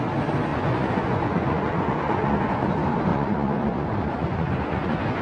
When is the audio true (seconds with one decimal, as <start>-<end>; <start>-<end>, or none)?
0.0-0.5; 2.7-3.1